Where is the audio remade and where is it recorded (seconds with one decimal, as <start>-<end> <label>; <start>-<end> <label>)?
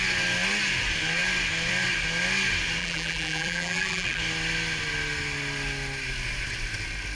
0.0-2.8 recorded; 2.8-4.2 remade; 4.2-7.1 recorded